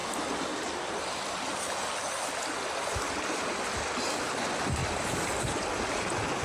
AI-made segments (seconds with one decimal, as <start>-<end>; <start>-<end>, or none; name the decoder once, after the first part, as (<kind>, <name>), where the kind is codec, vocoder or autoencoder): none